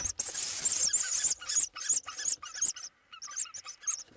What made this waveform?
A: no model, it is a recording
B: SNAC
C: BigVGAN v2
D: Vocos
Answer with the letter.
A